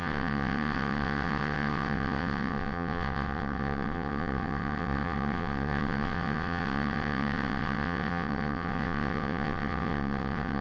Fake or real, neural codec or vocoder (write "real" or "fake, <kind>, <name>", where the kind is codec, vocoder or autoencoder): fake, vocoder, WaveNeXt